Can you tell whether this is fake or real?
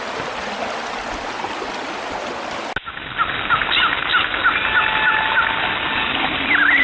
real